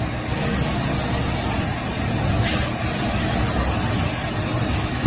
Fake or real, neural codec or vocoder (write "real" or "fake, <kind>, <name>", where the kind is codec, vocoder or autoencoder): real